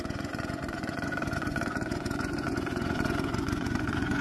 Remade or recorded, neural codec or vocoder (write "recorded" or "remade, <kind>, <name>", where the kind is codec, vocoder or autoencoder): remade, vocoder, Vocos